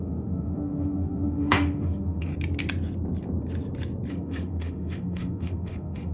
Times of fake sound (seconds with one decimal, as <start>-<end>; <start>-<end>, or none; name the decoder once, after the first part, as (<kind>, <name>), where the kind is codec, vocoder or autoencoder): 0.0-2.3 (autoencoder, DAC-VAE); 4.1-6.1

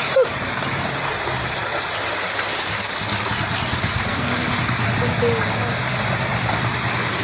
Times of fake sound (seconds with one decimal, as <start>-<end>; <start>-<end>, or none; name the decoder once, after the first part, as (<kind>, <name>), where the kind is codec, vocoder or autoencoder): 3.9-4.4 (codec, SNAC)

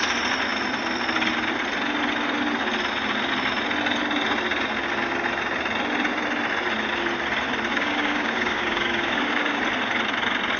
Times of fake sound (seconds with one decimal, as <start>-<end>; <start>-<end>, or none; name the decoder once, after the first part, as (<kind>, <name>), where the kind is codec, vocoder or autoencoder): 7.7-9.6 (codec, DAC)

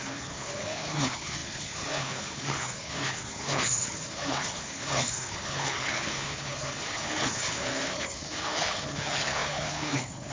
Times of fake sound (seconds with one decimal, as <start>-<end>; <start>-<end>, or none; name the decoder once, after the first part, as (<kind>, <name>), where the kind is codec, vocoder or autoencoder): 0.0-10.3 (codec, HILCodec)

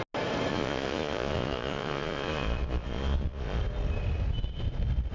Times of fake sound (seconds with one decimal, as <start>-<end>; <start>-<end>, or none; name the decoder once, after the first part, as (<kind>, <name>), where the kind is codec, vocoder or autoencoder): 0.5-3.6 (vocoder, Vocos)

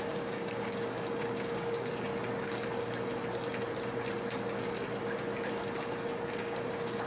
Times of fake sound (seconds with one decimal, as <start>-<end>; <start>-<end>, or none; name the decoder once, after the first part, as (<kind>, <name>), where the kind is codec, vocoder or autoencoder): 0.0-2.1 (codec, DAC); 6.4-7.1

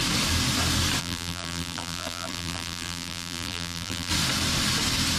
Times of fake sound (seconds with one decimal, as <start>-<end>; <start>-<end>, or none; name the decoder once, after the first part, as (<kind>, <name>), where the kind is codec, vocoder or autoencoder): 1.0-4.1 (vocoder, BigVGAN v2)